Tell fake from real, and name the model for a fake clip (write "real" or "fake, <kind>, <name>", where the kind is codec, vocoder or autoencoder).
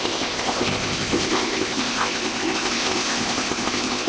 fake, codec, ZipCodec